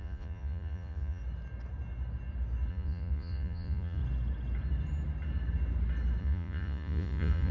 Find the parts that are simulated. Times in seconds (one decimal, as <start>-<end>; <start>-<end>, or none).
0.0-1.2; 2.7-4.0; 6.2-7.5